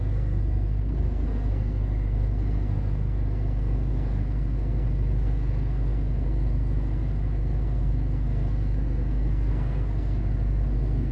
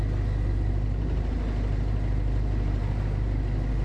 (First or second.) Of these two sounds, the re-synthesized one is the first